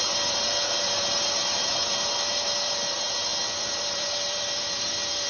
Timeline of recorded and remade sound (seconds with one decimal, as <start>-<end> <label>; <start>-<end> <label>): 0.0-5.3 remade